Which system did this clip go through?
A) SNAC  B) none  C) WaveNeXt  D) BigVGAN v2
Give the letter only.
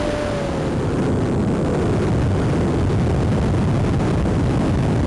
B